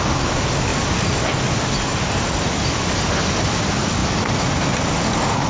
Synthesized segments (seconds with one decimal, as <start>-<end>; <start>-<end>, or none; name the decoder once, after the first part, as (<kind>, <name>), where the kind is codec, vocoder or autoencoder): none